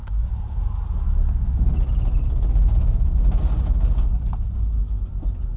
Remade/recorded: recorded